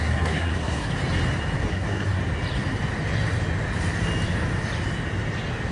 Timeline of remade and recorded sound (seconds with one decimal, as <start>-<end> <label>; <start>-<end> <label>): 0.0-0.9 remade; 0.9-1.7 recorded; 1.7-2.2 remade; 2.2-5.7 recorded